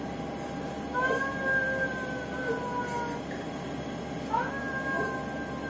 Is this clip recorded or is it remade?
recorded